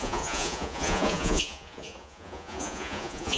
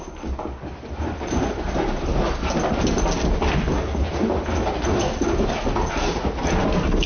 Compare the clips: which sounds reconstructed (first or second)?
first